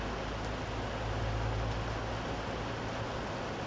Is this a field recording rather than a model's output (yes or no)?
yes